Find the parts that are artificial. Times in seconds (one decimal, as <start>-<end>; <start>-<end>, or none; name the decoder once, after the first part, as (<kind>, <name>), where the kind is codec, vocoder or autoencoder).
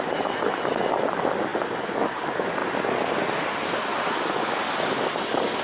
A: none